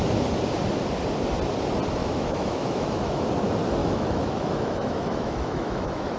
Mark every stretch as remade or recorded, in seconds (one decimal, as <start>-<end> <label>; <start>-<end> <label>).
0.0-2.0 recorded; 2.0-3.2 remade; 3.2-3.8 recorded; 3.8-6.2 remade